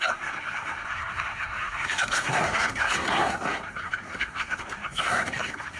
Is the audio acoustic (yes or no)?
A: no